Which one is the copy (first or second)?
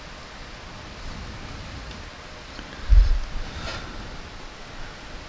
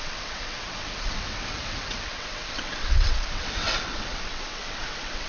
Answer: second